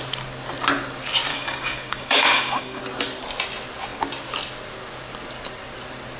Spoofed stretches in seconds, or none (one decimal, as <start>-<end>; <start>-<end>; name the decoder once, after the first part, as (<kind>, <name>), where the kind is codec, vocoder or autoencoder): 1.3-2.8 (codec, DAC)